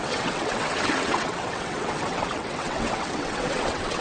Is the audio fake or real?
fake